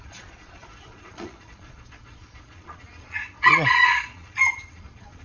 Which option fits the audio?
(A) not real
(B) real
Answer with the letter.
A